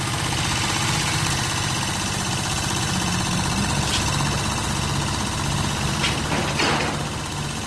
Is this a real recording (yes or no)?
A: yes